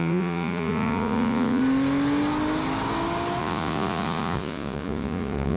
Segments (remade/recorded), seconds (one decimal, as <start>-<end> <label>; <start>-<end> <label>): 0.0-1.6 remade; 1.6-3.4 recorded; 3.4-5.6 remade